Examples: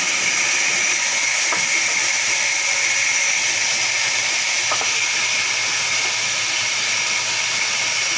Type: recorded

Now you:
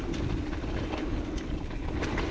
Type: remade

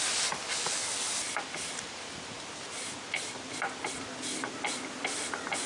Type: recorded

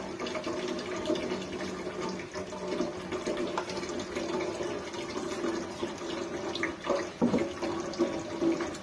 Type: recorded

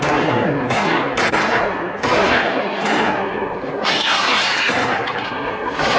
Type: remade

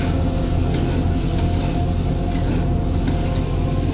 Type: recorded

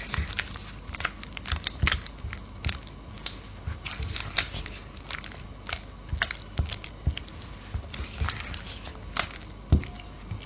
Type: recorded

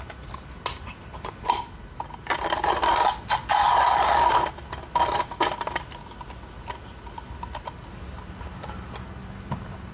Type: recorded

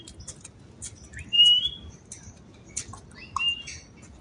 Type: recorded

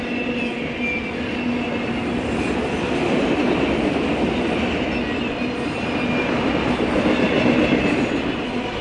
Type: recorded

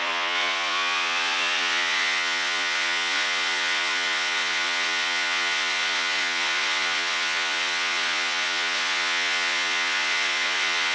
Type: remade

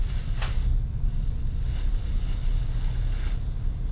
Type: recorded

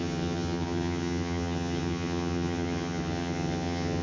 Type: remade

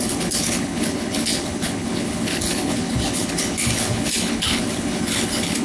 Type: remade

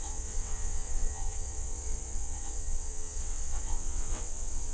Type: remade